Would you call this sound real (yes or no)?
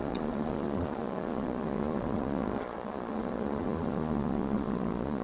no